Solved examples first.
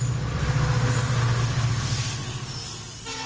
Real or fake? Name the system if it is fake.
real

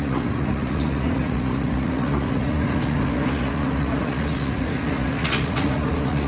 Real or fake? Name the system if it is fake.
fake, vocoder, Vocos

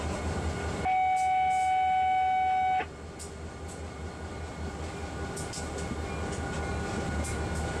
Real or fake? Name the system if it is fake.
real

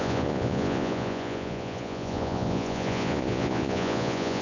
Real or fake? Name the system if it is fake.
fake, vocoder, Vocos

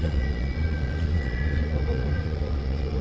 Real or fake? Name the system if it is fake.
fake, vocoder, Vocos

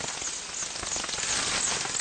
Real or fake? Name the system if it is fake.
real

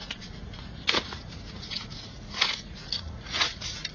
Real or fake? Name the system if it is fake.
fake, vocoder, Vocos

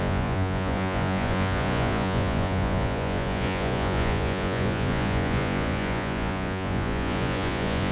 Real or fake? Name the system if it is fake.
fake, vocoder, Vocos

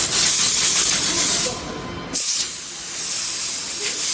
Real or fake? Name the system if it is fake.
real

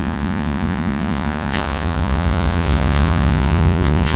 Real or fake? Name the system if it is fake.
fake, vocoder, Vocos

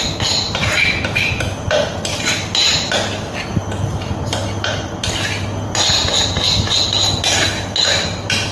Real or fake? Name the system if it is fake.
real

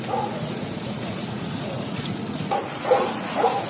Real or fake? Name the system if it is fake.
fake, vocoder, Vocos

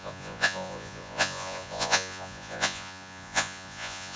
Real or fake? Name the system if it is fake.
fake, vocoder, Vocos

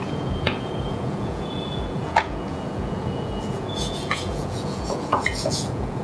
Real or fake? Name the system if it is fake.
fake, vocoder, Vocos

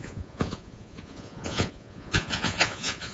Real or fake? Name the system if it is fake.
fake, vocoder, Vocos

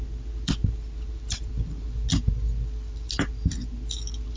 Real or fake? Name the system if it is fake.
real